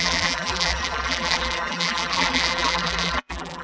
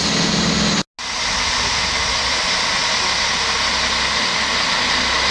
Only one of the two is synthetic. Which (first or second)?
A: first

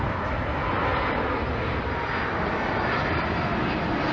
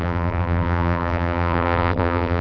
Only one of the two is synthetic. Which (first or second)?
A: second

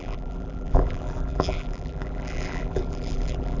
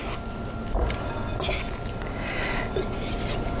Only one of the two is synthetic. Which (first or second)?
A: first